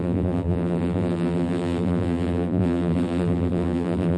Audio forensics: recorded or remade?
remade